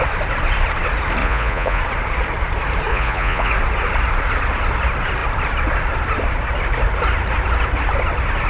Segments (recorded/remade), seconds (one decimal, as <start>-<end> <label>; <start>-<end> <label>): 0.0-1.2 recorded; 1.2-1.8 remade; 1.8-2.9 recorded; 2.9-3.5 remade; 3.5-8.5 recorded